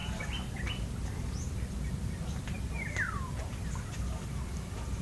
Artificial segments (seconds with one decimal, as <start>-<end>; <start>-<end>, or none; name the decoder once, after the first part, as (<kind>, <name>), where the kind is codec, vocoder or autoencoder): 1.9-5.0 (vocoder, BigVGAN v2)